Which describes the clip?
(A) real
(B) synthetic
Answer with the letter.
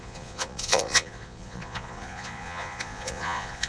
B